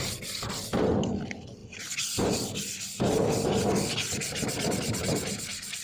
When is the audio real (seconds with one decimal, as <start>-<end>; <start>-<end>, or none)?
0.0-5.8

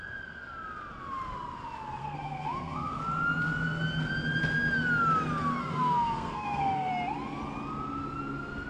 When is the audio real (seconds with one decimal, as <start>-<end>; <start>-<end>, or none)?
0.0-2.0; 3.0-5.6; 6.9-8.7

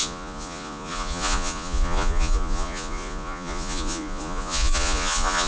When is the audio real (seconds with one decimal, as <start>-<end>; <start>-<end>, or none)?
none

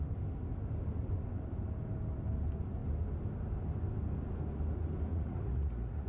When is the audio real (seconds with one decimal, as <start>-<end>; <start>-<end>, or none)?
0.0-5.1

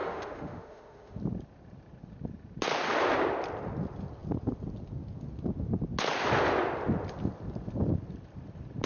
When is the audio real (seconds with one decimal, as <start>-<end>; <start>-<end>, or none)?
1.2-8.9

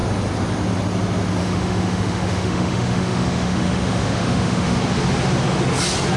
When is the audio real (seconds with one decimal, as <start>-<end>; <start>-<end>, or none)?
0.0-1.4; 4.8-6.2

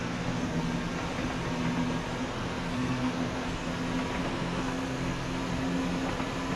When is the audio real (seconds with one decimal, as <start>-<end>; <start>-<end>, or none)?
0.6-2.2; 3.7-4.2; 5.4-6.6

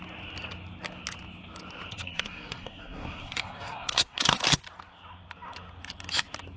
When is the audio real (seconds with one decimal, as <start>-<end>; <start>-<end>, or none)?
0.0-1.9; 4.4-6.6